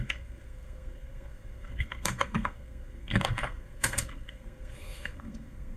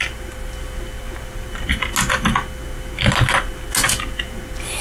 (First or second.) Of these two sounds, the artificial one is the first